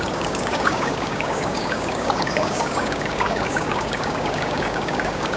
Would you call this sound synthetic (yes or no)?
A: yes